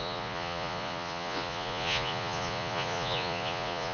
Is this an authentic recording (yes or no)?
no